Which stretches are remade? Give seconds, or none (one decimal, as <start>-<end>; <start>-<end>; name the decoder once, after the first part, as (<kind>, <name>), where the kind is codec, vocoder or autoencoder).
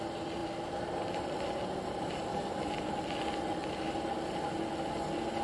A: none